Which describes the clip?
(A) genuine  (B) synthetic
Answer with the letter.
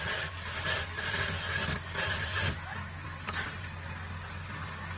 A